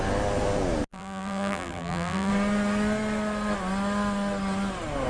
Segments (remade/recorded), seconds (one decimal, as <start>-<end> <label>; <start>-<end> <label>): 0.0-0.9 recorded; 0.9-2.3 remade; 2.3-5.1 recorded